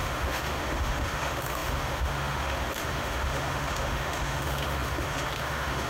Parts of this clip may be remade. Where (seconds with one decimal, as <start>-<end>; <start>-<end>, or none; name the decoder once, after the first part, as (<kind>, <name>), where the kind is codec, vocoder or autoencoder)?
0.0-5.9 (autoencoder, DAC-VAE)

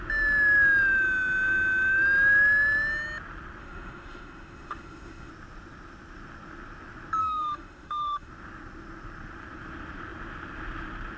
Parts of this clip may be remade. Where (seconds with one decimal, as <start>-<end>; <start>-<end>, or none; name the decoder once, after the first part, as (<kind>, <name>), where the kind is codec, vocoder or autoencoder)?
3.6-5.3 (autoencoder, DAC-VAE); 7.2-8.3

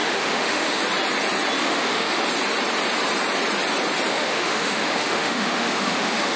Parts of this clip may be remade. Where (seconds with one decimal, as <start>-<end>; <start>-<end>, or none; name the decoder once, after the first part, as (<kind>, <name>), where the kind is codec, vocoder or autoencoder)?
0.0-0.8 (autoencoder, DAC-VAE); 1.6-2.2; 4.1-6.4

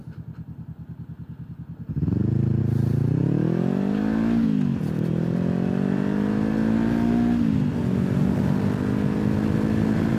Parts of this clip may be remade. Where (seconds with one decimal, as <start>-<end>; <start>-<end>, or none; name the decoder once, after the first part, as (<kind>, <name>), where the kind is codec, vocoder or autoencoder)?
none

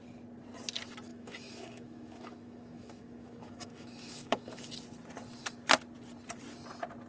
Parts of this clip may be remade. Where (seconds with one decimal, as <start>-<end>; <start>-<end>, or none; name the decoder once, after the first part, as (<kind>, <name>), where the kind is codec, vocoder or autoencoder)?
1.1-4.7 (autoencoder, DAC-VAE)

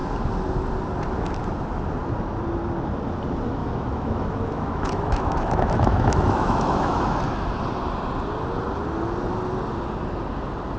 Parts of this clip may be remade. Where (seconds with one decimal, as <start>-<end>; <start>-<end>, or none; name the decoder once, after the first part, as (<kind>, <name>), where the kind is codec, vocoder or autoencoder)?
3.6-7.2 (autoencoder, DAC-VAE)

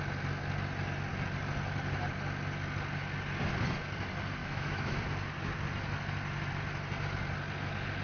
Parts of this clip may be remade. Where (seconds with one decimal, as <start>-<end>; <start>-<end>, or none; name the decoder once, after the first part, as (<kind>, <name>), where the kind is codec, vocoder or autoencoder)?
4.4-5.0 (autoencoder, DAC-VAE)

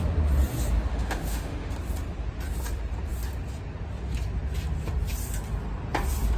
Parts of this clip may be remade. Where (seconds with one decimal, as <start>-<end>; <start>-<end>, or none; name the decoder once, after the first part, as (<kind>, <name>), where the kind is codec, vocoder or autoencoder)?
0.9-1.7 (autoencoder, DAC-VAE)